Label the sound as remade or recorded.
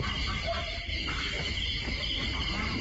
recorded